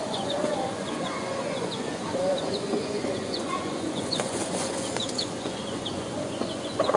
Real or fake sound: fake